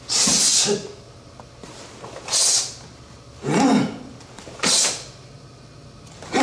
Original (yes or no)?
yes